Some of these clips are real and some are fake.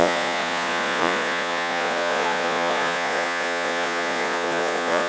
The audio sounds fake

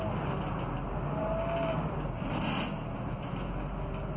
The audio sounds real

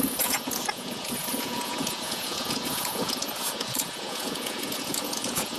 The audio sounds fake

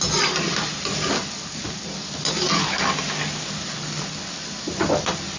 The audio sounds real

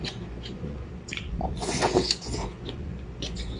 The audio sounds fake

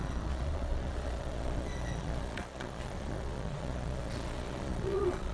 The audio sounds fake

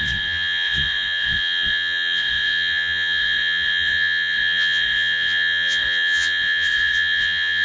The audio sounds fake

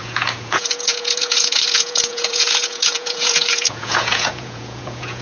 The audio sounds fake